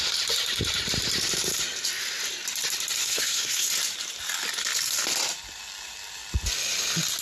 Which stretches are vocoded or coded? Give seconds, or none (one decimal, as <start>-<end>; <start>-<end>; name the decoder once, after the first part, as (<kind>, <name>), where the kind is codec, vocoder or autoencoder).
3.0-3.7 (codec, SNAC)